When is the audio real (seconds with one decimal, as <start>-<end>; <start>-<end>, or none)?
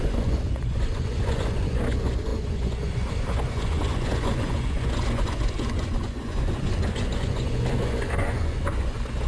none